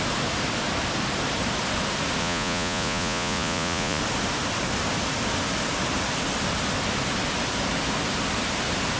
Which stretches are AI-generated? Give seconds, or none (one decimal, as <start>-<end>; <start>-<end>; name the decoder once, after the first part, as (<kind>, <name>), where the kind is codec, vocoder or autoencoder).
2.2-4.0 (vocoder, Vocos)